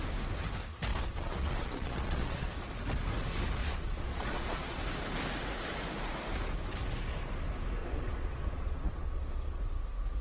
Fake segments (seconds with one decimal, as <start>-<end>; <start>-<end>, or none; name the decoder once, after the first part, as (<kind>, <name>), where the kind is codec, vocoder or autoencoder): 0.9-2.6 (vocoder, Vocos); 3.6-4.8; 7.8-9.6